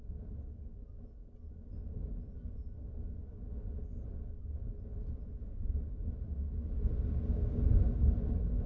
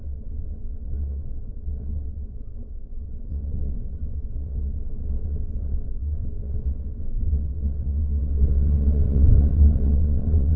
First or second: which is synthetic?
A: second